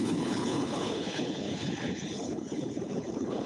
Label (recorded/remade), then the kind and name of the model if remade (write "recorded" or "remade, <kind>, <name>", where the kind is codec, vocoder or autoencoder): remade, codec, HILCodec